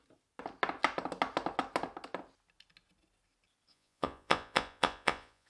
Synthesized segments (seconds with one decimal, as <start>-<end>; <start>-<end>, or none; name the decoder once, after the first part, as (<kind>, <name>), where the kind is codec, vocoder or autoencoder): 3.7-5.5 (vocoder, Vocos)